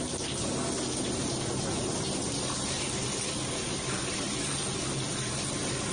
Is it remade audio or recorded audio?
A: recorded